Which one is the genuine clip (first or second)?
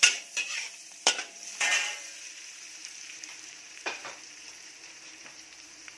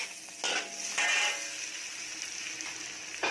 second